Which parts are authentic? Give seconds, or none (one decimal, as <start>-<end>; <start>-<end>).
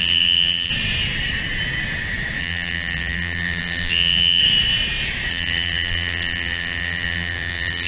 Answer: 0.7-2.4; 4.4-5.3